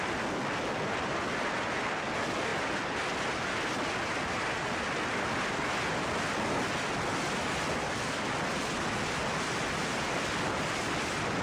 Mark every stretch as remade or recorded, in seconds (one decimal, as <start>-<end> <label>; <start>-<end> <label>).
0.0-11.4 recorded